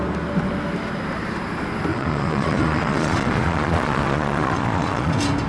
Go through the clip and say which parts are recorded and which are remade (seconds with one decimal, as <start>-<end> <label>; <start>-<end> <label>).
0.0-1.9 recorded; 1.9-5.1 remade; 5.1-5.5 recorded